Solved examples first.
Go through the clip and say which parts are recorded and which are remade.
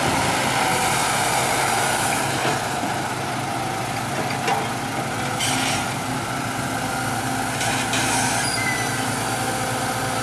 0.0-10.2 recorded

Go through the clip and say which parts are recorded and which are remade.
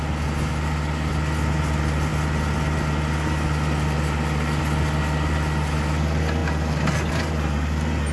0.0-8.1 recorded